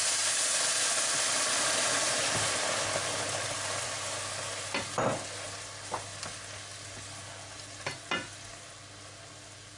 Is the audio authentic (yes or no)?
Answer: yes